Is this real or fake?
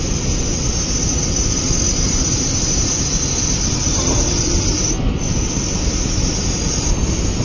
real